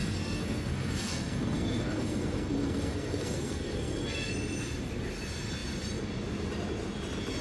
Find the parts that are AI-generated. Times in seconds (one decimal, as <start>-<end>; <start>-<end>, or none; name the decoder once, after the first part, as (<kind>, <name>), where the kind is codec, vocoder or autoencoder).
0.0-4.3 (codec, SNAC)